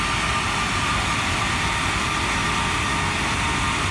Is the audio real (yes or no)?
yes